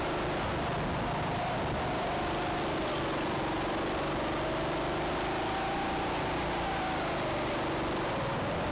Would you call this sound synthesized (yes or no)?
no